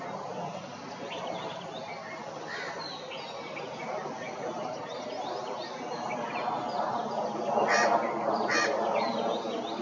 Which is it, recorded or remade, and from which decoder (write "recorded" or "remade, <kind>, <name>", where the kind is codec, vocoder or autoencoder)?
recorded